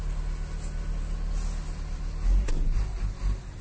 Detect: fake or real real